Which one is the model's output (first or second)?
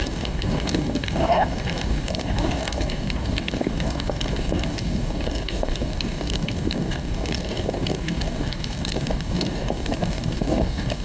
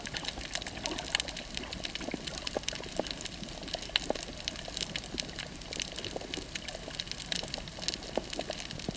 first